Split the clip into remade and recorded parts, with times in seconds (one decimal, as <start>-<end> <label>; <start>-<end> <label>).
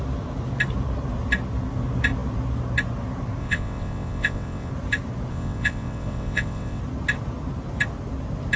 0.0-3.4 recorded; 3.4-4.7 remade; 4.7-5.3 recorded; 5.3-6.8 remade; 6.8-8.6 recorded